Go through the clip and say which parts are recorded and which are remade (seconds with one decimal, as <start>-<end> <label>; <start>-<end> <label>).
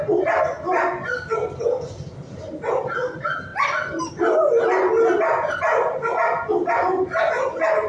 0.0-7.9 recorded